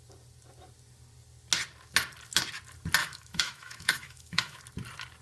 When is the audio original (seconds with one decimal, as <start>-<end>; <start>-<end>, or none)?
0.0-3.0; 4.6-5.2